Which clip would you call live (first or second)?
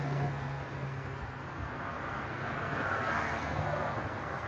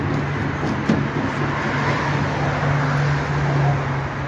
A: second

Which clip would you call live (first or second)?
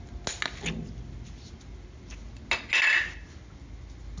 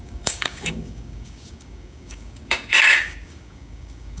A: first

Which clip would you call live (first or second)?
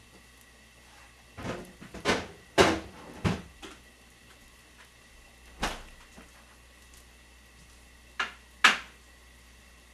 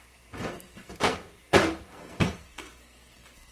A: first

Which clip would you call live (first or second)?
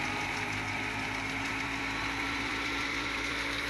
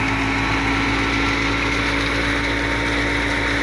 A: second